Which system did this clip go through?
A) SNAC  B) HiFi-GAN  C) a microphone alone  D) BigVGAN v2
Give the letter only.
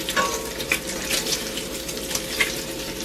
D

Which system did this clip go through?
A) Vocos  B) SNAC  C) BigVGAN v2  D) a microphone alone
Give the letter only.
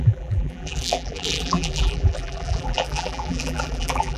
C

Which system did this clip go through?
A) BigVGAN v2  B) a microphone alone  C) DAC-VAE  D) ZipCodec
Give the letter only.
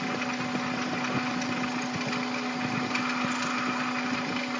B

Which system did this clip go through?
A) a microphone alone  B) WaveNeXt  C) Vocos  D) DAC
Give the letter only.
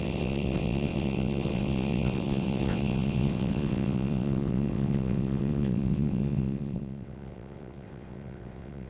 B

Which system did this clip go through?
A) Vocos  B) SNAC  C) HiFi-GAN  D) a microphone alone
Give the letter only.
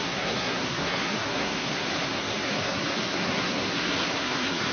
B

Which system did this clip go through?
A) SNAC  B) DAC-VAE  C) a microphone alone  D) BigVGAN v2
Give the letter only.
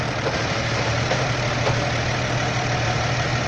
C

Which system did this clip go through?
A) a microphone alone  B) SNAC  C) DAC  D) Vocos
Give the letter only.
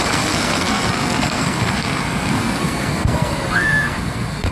B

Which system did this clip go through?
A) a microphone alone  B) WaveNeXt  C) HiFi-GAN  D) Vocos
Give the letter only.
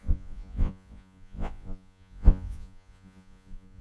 D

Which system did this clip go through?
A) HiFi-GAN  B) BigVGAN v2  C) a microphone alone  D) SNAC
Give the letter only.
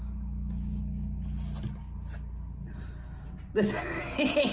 C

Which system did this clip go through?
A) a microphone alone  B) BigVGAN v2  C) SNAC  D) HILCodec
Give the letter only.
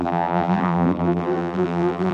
B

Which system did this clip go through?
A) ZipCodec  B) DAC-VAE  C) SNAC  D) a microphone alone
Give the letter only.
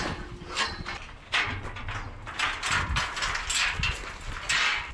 D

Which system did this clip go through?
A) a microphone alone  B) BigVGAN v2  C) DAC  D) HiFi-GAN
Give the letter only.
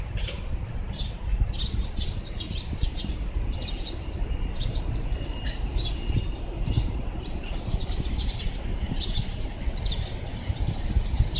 A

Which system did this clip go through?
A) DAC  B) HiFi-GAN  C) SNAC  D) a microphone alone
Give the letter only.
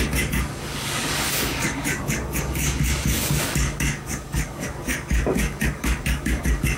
A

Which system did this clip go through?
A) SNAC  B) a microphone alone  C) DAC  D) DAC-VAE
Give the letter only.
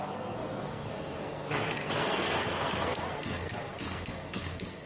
A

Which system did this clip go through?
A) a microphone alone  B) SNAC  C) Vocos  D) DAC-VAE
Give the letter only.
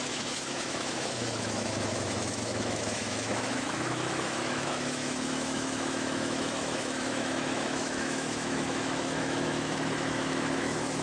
D